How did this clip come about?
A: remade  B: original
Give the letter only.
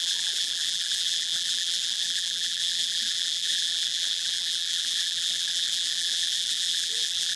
A